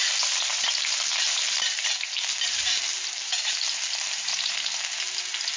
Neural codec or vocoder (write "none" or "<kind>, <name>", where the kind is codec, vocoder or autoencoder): vocoder, BigVGAN v2